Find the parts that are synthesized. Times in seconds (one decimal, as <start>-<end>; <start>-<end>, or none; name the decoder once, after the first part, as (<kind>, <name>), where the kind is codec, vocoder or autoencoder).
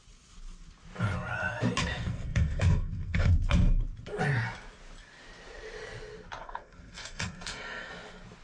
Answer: 1.8-3.3 (codec, SNAC); 6.4-7.9